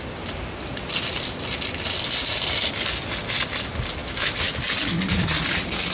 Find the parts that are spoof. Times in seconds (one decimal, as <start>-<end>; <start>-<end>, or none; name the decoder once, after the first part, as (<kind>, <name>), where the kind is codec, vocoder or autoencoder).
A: 4.0-4.5 (autoencoder, DAC-VAE)